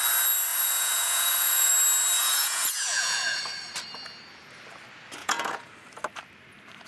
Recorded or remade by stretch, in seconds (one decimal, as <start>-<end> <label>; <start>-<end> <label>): 0.0-0.5 recorded; 0.5-1.7 remade; 1.7-2.2 recorded; 2.2-3.4 remade; 3.4-5.2 recorded; 5.2-5.7 remade; 5.7-6.9 recorded